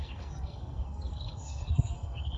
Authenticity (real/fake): fake